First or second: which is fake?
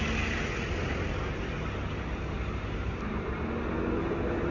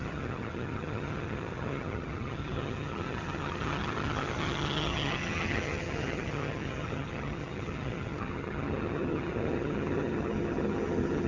second